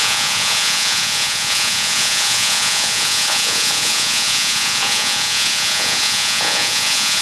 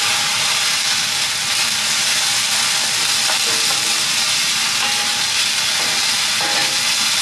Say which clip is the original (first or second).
second